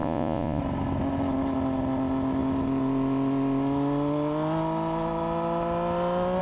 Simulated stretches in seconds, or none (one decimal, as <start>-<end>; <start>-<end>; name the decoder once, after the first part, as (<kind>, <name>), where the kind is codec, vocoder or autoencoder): 0.0-0.6 (vocoder, Vocos)